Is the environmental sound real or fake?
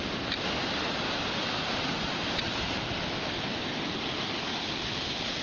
real